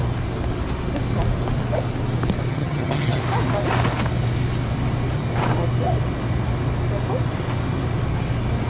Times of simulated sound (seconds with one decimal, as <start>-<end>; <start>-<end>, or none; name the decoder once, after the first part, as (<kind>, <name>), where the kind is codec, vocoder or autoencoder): 2.5-3.2 (vocoder, HiFi-GAN)